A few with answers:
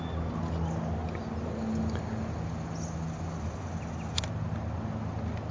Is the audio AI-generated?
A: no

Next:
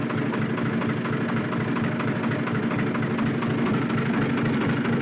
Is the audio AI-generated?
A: no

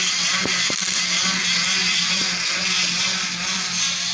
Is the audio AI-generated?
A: no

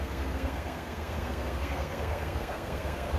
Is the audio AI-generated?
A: yes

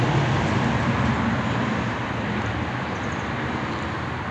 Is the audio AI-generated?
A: no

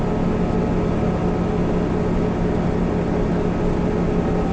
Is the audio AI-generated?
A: no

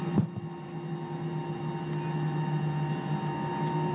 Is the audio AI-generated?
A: no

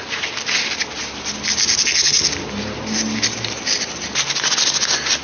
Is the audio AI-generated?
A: no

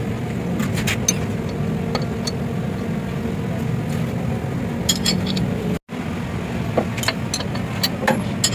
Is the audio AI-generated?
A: no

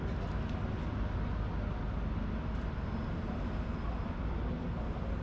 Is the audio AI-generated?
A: no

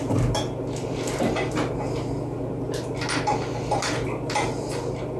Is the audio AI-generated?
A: no